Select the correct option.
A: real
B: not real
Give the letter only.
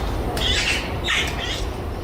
A